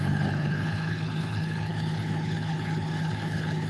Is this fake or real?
fake